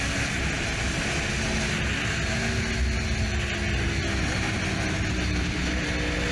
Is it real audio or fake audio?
real